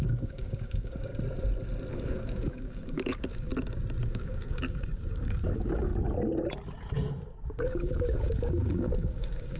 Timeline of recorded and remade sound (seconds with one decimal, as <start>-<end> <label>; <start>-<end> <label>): 0.0-1.1 remade; 1.1-1.9 recorded; 1.9-3.5 remade; 3.5-4.0 recorded; 4.0-5.9 remade; 5.9-7.6 recorded; 7.6-9.6 remade